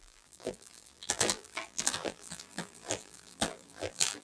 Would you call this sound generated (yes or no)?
yes